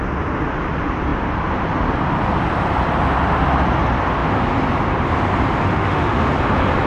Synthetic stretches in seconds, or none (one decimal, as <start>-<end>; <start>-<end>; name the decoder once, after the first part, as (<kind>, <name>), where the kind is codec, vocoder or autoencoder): 5.6-6.3 (autoencoder, DAC-VAE)